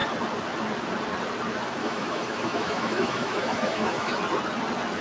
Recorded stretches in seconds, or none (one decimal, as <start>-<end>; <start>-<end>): 0.0-1.8; 4.1-5.0

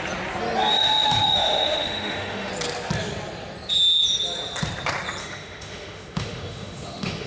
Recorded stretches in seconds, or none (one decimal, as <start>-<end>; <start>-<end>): 0.0-0.7; 2.5-5.2

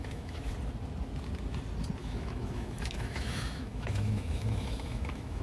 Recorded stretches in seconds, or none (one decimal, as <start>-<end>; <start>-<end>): 0.5-2.0

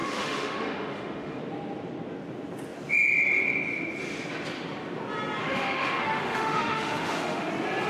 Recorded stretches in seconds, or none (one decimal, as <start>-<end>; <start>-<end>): 1.4-5.4; 7.5-7.9

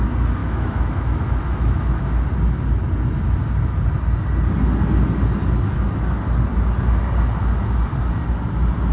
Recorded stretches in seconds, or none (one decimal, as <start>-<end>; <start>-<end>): 0.0-0.4; 2.1-8.9